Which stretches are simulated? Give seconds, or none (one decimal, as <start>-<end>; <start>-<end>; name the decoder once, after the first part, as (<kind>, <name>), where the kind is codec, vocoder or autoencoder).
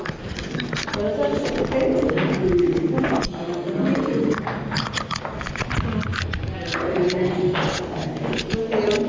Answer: none